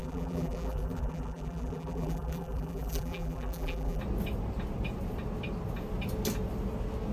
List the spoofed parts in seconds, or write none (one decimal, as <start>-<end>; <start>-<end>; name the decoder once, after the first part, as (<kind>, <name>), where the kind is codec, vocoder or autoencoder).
0.0-4.0 (vocoder, BigVGAN v2)